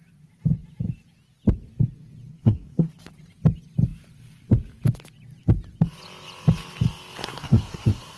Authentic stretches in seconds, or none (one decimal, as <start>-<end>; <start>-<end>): 0.0-2.3; 2.9-7.2